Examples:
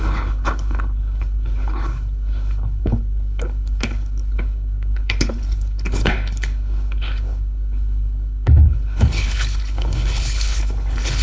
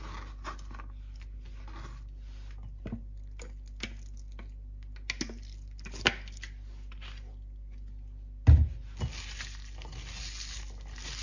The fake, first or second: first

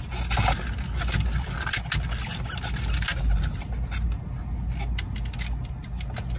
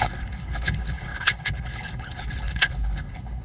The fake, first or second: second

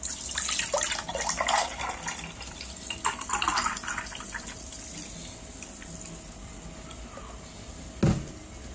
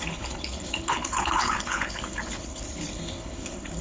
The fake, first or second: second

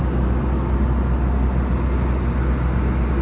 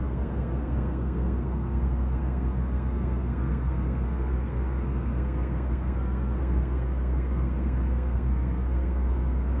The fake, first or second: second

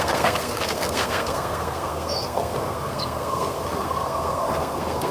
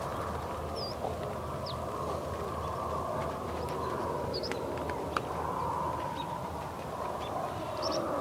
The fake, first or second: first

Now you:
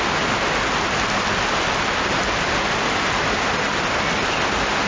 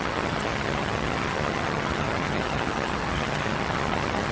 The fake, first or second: second